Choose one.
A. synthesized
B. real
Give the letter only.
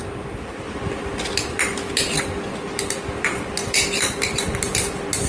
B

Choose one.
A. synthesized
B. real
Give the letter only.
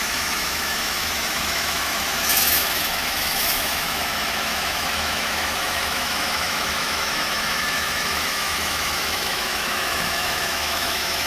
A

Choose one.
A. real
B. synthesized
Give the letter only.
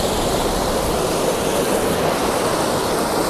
A